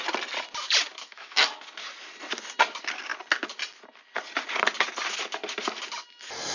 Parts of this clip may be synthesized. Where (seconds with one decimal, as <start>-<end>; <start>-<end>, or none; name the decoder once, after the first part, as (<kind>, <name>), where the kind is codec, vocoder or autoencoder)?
0.9-1.6 (autoencoder, DAC-VAE)